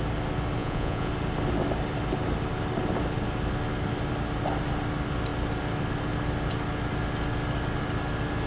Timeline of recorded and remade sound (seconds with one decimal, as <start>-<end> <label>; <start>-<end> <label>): 0.0-0.6 recorded; 0.6-1.1 remade; 1.1-8.5 recorded